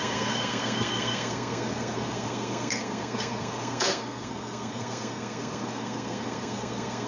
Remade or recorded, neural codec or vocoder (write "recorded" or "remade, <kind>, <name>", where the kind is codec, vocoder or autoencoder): remade, codec, SNAC